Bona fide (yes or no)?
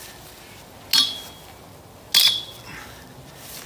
yes